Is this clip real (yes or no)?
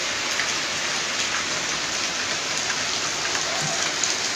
yes